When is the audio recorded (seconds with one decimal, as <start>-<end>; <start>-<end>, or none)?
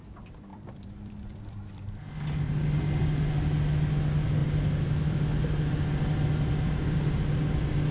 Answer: 0.0-0.5; 2.0-7.9